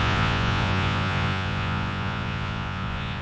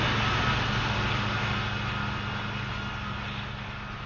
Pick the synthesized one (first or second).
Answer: first